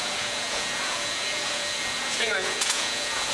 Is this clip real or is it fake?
fake